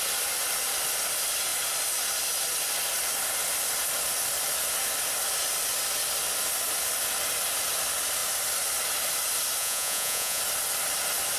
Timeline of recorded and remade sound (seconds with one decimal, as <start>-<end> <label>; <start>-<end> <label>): 0.0-9.6 recorded; 9.6-10.4 remade; 10.4-11.4 recorded